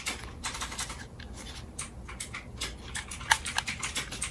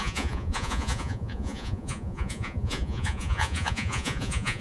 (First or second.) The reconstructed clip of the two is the second